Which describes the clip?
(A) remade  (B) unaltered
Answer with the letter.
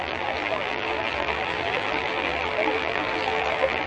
A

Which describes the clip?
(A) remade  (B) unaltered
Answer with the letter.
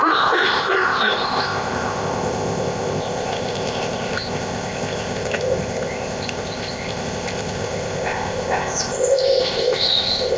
A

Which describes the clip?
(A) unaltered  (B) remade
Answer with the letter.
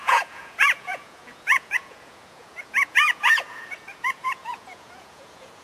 B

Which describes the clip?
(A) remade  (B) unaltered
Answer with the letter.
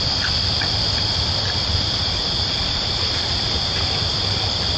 A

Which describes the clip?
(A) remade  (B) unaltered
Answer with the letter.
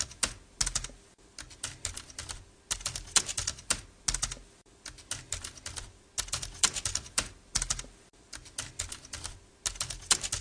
B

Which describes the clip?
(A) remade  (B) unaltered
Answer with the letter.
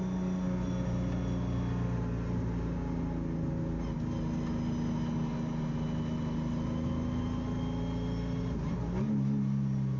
B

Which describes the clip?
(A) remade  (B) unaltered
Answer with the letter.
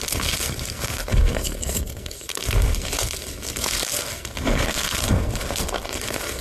A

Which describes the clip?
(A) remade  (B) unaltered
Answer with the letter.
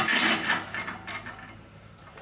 B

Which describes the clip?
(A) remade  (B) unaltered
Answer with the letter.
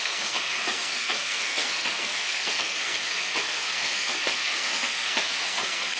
A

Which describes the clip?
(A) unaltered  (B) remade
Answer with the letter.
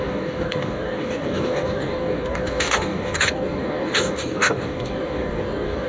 B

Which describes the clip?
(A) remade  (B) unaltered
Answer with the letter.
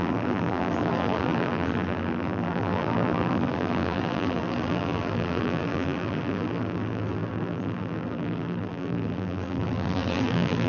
A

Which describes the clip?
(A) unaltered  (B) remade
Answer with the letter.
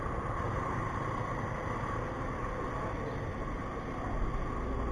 A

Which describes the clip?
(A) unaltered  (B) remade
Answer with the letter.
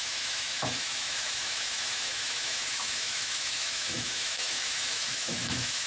B